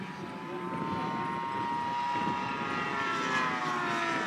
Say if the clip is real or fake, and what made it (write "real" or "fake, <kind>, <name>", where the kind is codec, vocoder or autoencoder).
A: real